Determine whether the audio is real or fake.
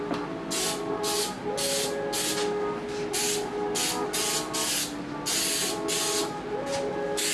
real